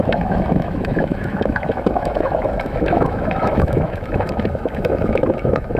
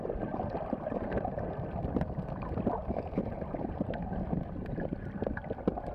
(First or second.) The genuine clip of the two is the second